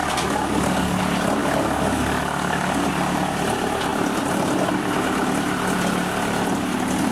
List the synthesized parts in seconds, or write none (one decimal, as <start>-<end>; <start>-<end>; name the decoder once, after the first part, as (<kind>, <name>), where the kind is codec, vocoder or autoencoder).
0.0-1.0 (codec, DAC); 1.4-2.9